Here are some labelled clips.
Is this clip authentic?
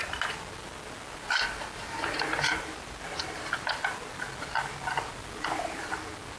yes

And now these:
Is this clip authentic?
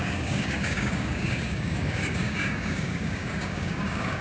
no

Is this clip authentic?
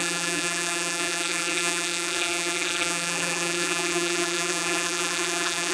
no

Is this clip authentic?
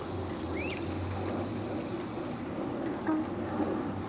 yes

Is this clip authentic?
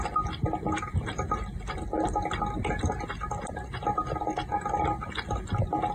yes